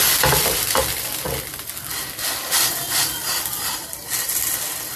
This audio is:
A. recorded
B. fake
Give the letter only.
A